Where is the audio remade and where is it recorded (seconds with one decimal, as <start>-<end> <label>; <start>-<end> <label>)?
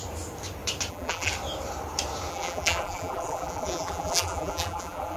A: 0.0-0.9 recorded; 0.9-1.3 remade; 1.3-2.3 recorded; 2.3-5.2 remade